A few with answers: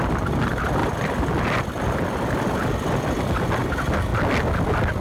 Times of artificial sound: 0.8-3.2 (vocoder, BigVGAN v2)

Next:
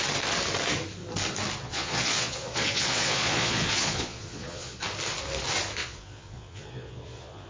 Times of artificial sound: 1.6-4.8 (vocoder, Vocos); 5.8-7.5